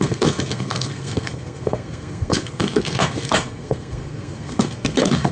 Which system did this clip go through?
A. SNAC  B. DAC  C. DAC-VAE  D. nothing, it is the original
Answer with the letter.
A